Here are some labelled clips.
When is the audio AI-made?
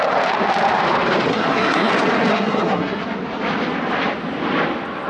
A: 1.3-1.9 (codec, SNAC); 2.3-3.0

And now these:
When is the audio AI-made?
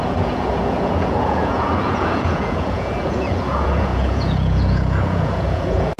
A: 0.0-6.0 (vocoder, Vocos)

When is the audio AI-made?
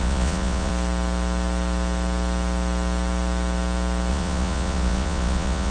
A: 0.0-0.7 (vocoder, Vocos); 4.1-5.7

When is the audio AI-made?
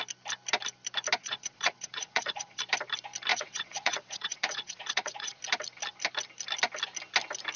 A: 1.2-2.6 (vocoder, Vocos); 3.3-5.4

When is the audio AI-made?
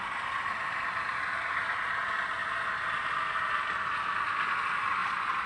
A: 5.0-5.5 (vocoder, Vocos)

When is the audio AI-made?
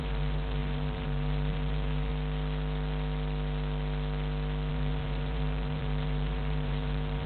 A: 0.0-2.1 (vocoder, BigVGAN v2); 4.7-7.3